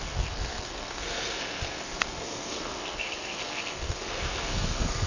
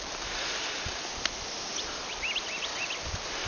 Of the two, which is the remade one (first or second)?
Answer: first